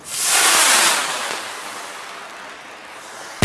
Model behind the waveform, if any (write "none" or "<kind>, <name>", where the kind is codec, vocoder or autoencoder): none